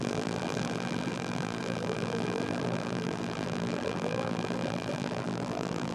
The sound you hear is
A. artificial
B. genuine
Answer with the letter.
A